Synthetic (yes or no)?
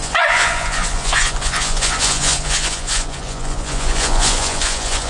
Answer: yes